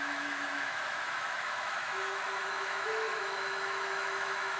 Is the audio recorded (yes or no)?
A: no